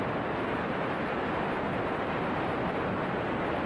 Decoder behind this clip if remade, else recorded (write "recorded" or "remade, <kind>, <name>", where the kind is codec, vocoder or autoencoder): recorded